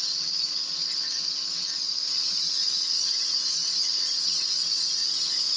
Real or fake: fake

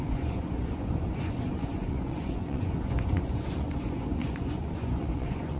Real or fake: fake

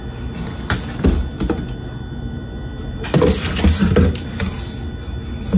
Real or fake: real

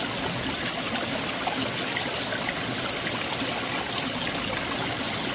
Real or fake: real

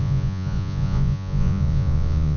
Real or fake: fake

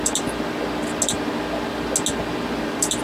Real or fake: real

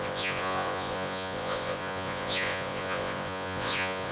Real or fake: fake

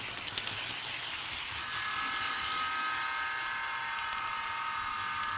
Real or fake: real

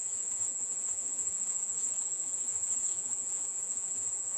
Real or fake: fake